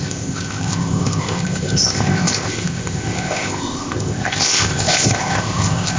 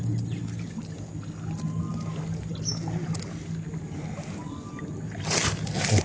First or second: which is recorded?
second